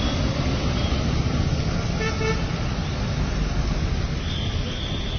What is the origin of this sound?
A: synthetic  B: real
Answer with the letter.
B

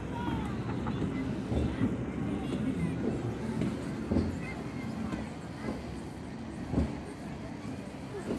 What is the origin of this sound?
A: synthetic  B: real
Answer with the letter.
B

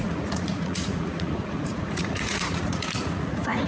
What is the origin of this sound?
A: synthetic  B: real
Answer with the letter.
A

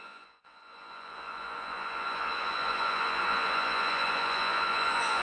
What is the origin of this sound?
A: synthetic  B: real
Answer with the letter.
A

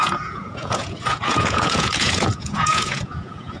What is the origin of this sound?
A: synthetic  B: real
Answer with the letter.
A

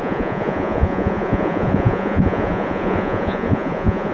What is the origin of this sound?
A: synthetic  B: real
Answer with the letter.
A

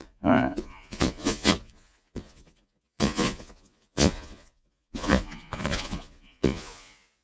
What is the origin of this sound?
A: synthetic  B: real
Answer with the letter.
A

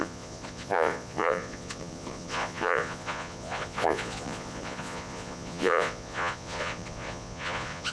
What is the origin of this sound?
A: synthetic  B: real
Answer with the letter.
A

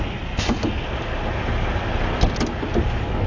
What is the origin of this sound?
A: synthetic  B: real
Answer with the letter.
B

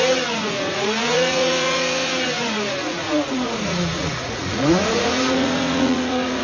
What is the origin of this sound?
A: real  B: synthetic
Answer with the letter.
B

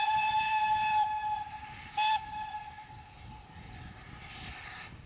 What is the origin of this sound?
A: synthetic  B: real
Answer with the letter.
B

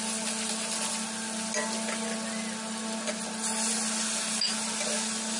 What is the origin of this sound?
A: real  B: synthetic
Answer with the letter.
A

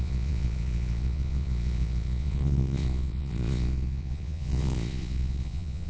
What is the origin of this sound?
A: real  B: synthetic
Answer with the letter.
B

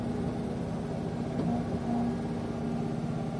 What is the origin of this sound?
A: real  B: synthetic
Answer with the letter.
A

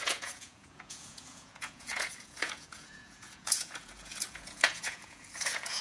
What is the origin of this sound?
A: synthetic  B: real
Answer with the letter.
A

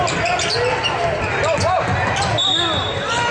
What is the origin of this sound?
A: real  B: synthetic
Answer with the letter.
A